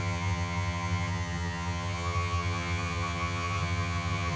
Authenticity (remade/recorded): remade